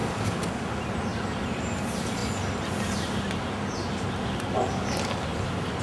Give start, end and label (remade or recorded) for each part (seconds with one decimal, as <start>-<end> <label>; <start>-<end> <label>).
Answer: 0.0-0.7 remade; 0.7-5.8 recorded